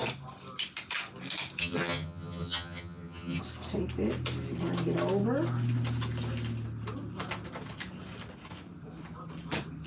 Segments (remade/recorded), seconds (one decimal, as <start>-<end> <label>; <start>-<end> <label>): 0.0-1.6 recorded; 1.6-3.4 remade; 3.4-9.9 recorded